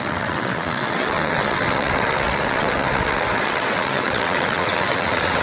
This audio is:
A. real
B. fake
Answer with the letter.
B